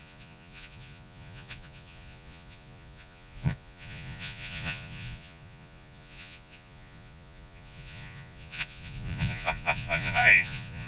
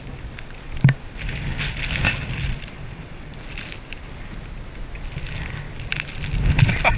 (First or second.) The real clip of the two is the second